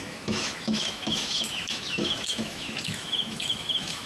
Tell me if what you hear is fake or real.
fake